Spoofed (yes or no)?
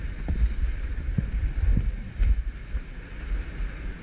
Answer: no